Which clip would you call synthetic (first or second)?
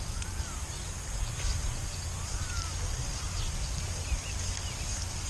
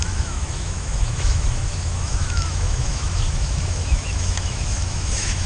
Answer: second